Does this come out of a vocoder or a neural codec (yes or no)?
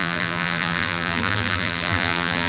yes